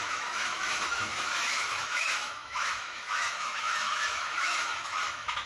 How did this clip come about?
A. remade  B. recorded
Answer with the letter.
A